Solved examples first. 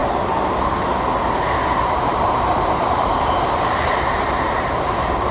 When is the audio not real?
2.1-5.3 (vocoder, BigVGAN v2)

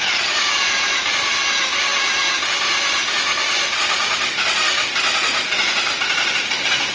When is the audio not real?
none

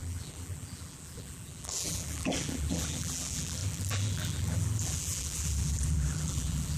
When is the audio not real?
0.0-6.8 (vocoder, BigVGAN v2)

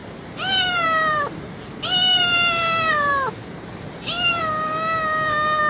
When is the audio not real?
0.0-1.5 (vocoder, BigVGAN v2); 2.1-4.4